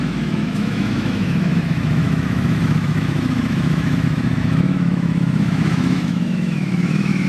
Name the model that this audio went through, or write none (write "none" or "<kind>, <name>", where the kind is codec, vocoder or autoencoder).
autoencoder, DAC-VAE